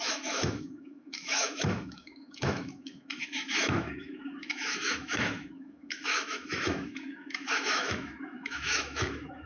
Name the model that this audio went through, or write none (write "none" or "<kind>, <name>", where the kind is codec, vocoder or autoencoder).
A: autoencoder, DAC-VAE